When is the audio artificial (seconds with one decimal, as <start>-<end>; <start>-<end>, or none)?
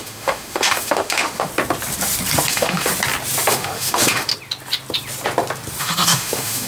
0.0-1.5; 2.5-2.9; 3.5-4.3; 5.8-6.7